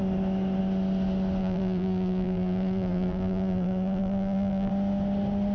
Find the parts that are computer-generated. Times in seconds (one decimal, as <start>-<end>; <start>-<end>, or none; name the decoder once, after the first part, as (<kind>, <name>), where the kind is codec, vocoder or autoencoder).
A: 1.4-4.7 (vocoder, BigVGAN v2)